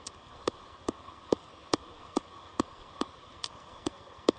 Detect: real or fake fake